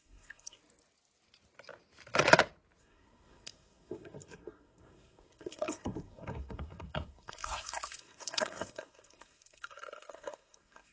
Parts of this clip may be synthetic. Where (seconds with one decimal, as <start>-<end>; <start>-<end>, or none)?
0.0-0.6; 2.8-10.9